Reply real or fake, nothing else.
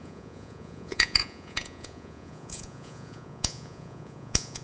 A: fake